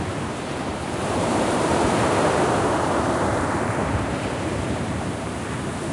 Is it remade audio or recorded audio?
remade